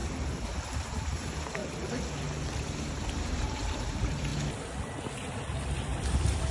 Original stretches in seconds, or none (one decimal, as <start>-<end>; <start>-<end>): 0.0-0.9; 1.6-2.6; 4.3-6.1